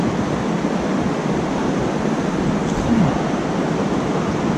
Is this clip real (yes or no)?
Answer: yes